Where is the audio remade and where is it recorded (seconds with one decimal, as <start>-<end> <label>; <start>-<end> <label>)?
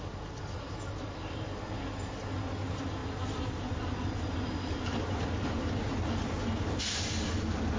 0.0-7.8 recorded